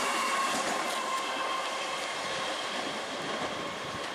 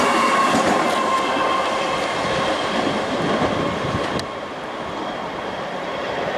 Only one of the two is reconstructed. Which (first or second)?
first